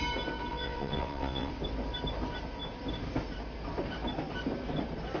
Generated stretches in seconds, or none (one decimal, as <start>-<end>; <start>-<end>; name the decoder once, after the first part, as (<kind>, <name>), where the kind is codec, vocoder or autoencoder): 0.5-1.5 (vocoder, WaveNeXt)